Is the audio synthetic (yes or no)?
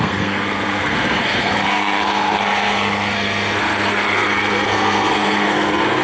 yes